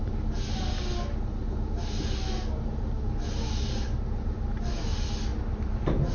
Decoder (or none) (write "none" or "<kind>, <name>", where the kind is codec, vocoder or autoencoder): none